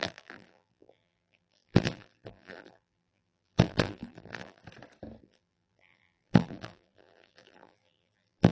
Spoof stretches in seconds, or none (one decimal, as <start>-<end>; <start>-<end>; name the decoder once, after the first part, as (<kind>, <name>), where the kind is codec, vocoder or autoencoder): 0.0-4.6 (vocoder, BigVGAN v2); 5.2-8.5